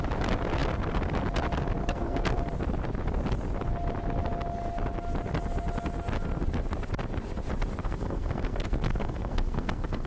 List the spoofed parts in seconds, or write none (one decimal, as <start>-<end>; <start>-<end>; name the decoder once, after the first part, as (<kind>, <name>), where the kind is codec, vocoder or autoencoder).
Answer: 1.8-2.4 (codec, SNAC); 7.8-10.1

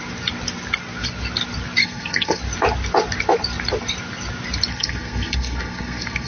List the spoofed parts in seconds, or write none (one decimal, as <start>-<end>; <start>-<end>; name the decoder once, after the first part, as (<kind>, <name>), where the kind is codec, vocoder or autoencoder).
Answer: 1.8-2.4 (codec, SNAC); 4.7-6.3

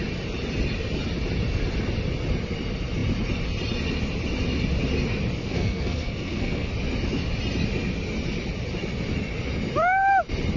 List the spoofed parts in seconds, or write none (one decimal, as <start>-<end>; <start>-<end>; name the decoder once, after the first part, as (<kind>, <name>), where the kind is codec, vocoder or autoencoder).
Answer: 5.4-6.7 (codec, SNAC)

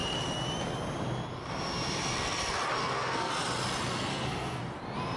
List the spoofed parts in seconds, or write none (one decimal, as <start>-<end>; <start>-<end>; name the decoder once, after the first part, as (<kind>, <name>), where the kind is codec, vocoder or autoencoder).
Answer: 2.8-3.3 (codec, SNAC); 4.1-4.6

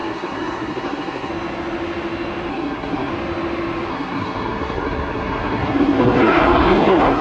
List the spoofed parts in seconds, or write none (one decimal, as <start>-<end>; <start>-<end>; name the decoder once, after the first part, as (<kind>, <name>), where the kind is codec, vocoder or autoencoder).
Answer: 0.0-1.3 (codec, SNAC); 2.5-3.1; 3.9-7.2

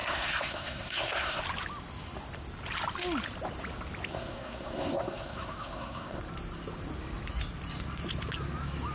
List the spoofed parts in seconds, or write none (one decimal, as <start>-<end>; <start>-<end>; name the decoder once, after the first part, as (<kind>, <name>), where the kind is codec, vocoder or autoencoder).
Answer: 0.0-1.4 (codec, SNAC); 4.1-6.2

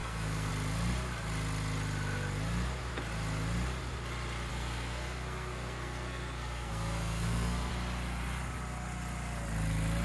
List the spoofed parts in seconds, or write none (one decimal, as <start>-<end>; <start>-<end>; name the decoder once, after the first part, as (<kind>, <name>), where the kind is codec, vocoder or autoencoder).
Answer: 0.0-0.5 (codec, SNAC); 4.5-7.7

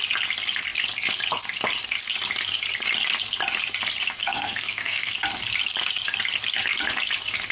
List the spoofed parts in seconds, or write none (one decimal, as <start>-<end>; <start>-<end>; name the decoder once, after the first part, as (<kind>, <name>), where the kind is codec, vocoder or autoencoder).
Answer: 4.2-5.1 (codec, SNAC)